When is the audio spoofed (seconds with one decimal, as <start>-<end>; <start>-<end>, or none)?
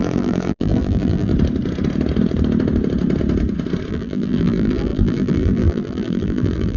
0.0-1.3; 3.9-6.8